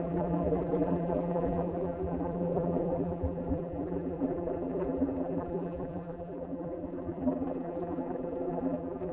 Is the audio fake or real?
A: fake